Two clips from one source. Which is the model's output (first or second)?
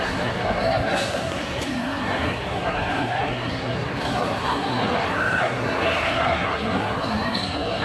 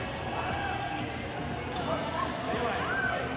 first